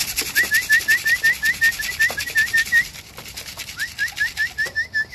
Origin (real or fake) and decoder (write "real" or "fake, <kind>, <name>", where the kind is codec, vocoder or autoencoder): real